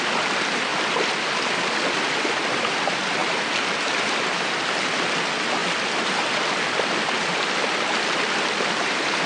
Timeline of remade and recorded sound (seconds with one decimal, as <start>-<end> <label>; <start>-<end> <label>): 0.0-0.7 remade; 0.7-1.7 recorded; 1.7-3.2 remade; 3.2-3.7 recorded; 3.7-5.6 remade; 5.6-7.6 recorded; 7.6-9.3 remade